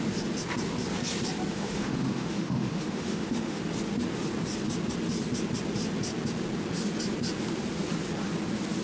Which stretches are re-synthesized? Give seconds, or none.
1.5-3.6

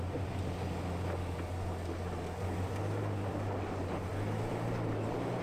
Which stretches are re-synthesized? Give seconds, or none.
none

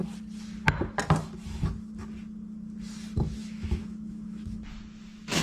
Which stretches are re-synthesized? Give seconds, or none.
3.4-5.4